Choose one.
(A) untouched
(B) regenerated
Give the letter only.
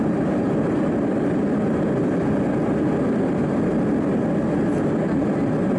A